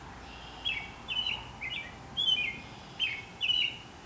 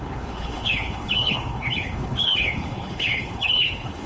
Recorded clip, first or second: first